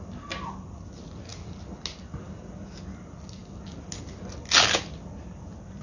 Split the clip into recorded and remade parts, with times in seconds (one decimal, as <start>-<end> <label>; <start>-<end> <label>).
0.0-5.8 recorded